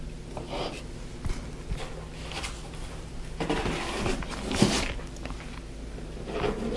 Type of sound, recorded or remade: recorded